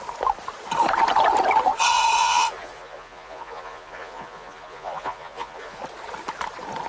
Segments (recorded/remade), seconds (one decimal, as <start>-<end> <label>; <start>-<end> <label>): 0.0-2.2 recorded; 2.2-5.8 remade; 5.8-6.9 recorded